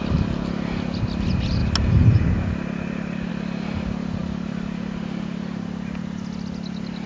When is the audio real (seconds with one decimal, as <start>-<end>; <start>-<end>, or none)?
0.0-7.1

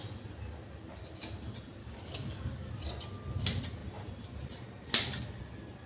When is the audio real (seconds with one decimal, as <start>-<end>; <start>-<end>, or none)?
0.0-1.8; 2.7-5.9